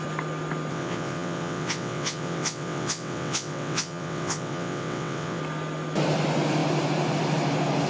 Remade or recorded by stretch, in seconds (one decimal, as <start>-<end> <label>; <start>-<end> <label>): 0.0-0.7 recorded; 0.7-5.4 remade; 5.4-7.9 recorded